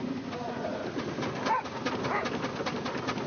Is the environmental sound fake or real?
real